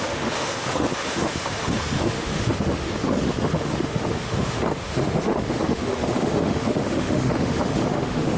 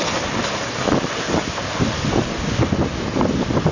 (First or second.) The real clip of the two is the second